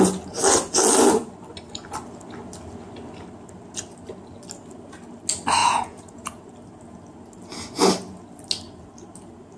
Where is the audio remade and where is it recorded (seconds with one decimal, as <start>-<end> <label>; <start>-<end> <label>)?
0.0-5.6 recorded; 5.6-6.4 remade; 6.4-9.6 recorded